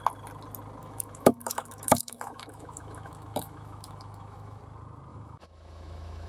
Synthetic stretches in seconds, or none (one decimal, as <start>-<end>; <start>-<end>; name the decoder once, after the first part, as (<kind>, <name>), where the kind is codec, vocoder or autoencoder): 0.8-4.6 (autoencoder, DAC-VAE); 5.1-6.3